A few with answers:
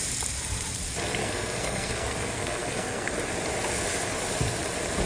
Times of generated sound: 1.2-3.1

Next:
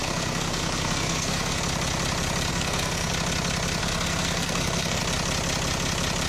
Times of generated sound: 0.0-1.6; 2.5-3.1; 3.8-5.0

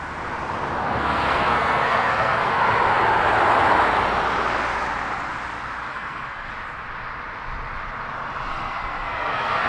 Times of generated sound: 0.8-2.6; 5.9-6.5; 8.5-9.7

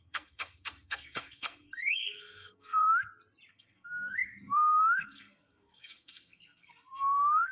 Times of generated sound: 0.0-2.9; 3.5-7.5

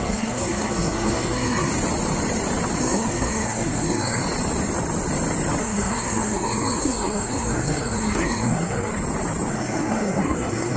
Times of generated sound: 0.0-1.7; 2.8-4.2; 5.6-8.9; 9.5-10.8